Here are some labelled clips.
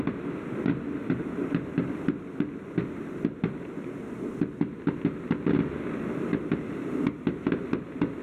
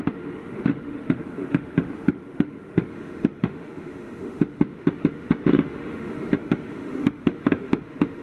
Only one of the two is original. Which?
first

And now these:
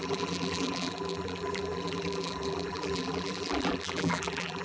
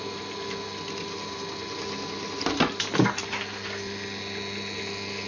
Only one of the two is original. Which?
second